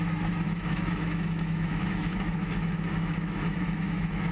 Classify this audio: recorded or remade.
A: remade